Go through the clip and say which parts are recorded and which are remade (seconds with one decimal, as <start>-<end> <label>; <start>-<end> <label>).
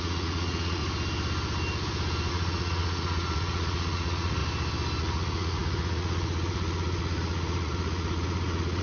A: 0.0-0.8 remade; 0.8-2.3 recorded; 2.3-4.4 remade; 4.4-5.0 recorded; 5.0-8.8 remade